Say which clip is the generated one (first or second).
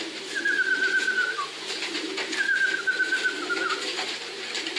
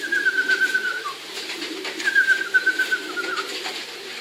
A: second